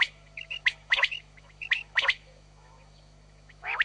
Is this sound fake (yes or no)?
yes